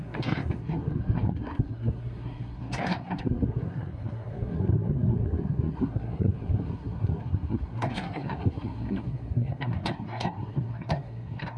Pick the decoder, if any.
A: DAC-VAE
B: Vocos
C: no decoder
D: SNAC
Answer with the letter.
D